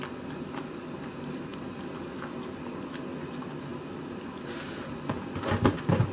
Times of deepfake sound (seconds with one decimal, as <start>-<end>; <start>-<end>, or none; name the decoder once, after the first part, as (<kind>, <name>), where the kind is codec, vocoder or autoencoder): none